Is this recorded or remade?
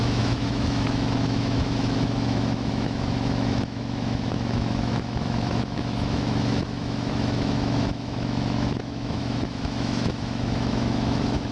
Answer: remade